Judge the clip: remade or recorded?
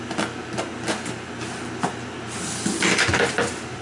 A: recorded